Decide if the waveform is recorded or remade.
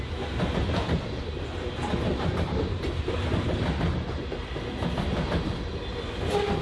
recorded